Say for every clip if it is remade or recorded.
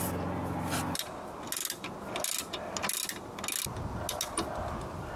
recorded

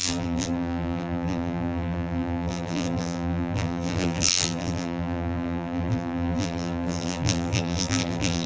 remade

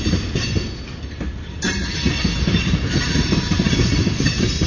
remade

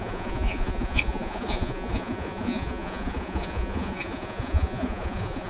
remade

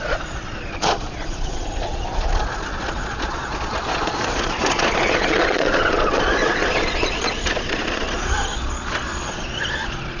remade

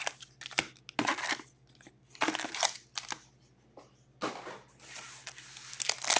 recorded